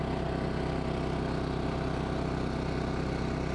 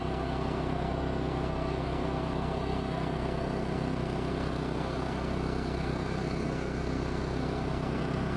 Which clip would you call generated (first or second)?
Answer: second